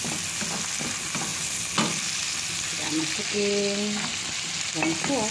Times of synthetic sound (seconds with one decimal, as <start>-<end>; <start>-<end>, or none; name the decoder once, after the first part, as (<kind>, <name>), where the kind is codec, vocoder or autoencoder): none